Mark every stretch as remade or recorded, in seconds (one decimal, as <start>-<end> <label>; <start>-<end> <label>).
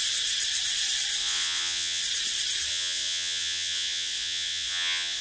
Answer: 0.0-1.2 recorded; 1.2-2.0 remade; 2.0-2.7 recorded; 2.7-5.2 remade